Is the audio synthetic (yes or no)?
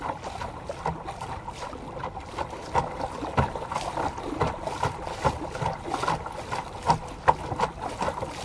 no